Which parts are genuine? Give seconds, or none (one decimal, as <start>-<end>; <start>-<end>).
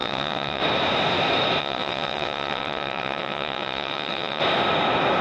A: 0.6-1.6; 4.4-5.2